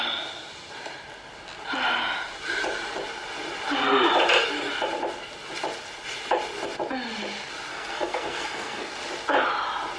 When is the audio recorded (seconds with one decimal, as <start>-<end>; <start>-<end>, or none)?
0.0-7.7; 8.9-10.0